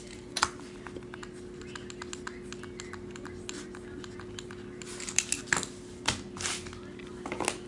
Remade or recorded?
recorded